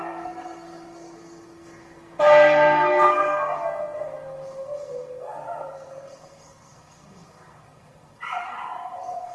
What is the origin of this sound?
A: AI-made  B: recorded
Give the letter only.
A